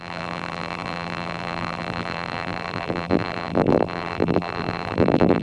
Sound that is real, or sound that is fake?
fake